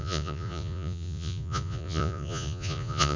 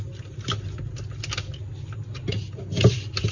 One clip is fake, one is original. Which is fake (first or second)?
first